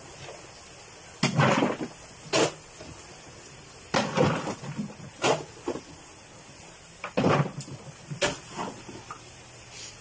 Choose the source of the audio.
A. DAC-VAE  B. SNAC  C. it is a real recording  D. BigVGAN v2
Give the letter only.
C